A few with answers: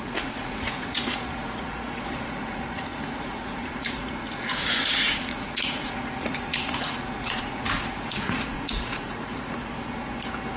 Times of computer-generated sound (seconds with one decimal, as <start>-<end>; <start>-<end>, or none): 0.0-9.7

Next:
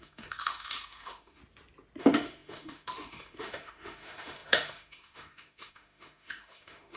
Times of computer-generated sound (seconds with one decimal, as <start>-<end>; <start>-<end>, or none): 0.0-1.4; 2.0-7.0

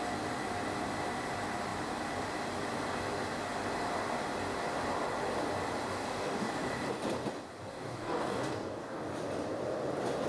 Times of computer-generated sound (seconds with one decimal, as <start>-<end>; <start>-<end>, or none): 5.9-6.5; 7.7-9.0